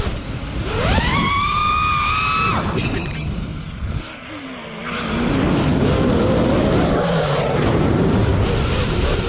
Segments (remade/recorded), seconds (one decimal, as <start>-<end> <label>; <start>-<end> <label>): 0.0-1.6 remade; 1.6-2.8 recorded; 2.8-3.5 remade; 3.5-7.3 recorded; 7.3-8.3 remade; 8.3-8.8 recorded; 8.8-9.3 remade